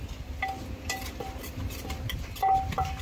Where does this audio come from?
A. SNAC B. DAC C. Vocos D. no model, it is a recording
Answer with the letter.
D